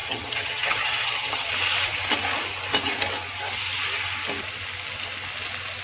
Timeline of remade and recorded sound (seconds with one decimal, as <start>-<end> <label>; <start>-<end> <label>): 0.0-1.5 remade; 1.5-5.8 recorded